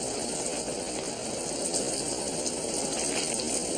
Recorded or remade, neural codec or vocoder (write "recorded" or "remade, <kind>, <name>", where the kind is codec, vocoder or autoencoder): recorded